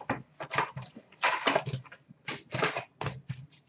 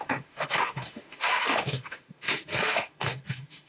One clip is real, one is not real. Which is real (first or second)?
first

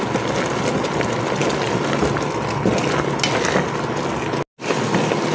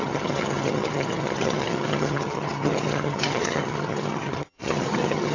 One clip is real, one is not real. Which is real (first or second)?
first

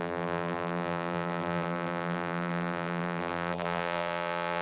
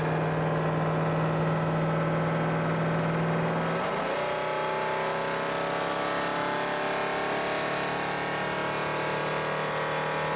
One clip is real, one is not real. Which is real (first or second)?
second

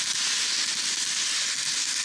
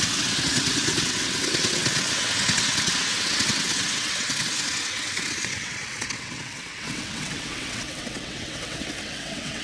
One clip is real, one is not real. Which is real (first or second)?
first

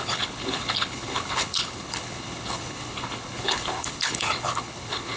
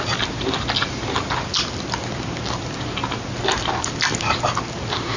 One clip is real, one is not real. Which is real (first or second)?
second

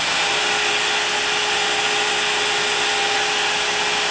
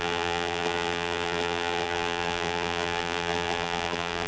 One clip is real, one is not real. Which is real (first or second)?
first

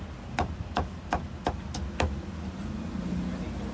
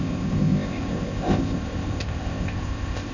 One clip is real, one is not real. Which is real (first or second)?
first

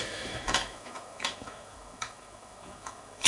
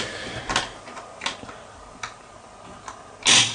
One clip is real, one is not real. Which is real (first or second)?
second